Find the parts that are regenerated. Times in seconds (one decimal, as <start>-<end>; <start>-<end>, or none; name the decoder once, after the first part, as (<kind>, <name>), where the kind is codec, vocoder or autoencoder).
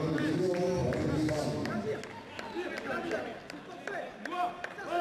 none